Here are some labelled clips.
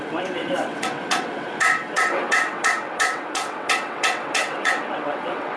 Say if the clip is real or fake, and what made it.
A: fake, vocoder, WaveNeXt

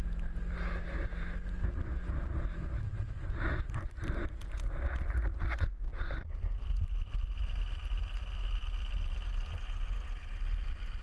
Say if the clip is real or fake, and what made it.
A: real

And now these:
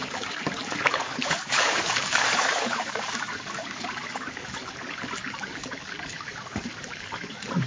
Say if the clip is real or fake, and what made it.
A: fake, codec, DAC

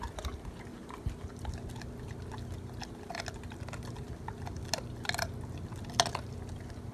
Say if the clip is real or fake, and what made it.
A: real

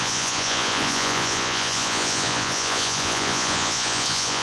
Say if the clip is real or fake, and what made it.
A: fake, vocoder, Vocos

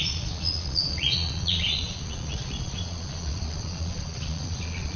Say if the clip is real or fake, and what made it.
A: fake, vocoder, Vocos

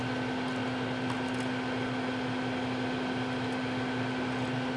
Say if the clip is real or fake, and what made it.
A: real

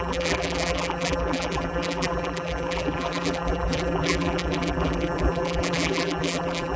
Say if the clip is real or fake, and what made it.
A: fake, vocoder, BigVGAN v2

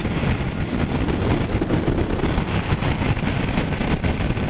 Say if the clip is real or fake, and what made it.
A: real